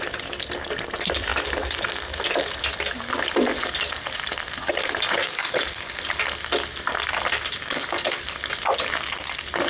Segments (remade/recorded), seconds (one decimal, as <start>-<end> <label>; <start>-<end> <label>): 0.0-5.2 recorded; 5.2-6.0 remade; 6.0-7.6 recorded; 7.6-8.2 remade; 8.2-9.7 recorded